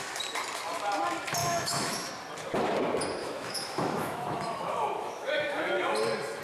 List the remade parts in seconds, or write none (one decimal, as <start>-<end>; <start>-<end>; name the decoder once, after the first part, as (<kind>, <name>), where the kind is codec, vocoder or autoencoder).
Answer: 1.4-2.1 (autoencoder, DAC-VAE); 3.2-5.8

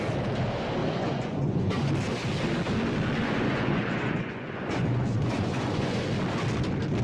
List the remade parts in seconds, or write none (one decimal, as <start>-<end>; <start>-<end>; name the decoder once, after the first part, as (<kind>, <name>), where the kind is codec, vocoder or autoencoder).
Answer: 0.8-1.9 (vocoder, Vocos); 3.2-6.0

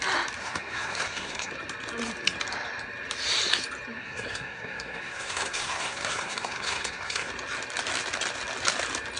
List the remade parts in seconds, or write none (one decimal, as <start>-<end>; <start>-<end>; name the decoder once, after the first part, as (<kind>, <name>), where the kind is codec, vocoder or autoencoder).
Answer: 0.4-1.5 (codec, SNAC); 4.0-7.3

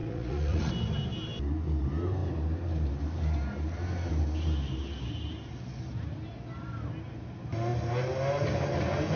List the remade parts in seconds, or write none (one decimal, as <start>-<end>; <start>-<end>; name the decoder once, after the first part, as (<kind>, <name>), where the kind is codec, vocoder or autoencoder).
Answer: 0.0-0.7 (vocoder, Vocos)

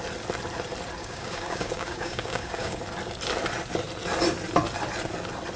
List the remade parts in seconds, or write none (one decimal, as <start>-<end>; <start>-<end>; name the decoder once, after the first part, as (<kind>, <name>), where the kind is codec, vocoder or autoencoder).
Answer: 1.0-2.8 (codec, DAC)

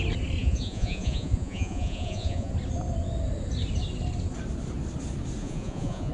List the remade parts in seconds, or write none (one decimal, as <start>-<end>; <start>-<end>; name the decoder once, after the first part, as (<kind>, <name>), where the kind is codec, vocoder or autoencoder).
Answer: 0.4-2.5 (vocoder, Vocos); 5.4-6.1

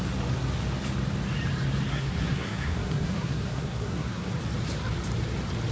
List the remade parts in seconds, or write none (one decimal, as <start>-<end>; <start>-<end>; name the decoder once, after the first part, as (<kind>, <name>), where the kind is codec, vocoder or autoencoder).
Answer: 1.9-4.3 (codec, SNAC)